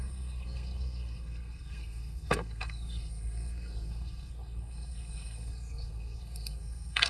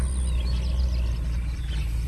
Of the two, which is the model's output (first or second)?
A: first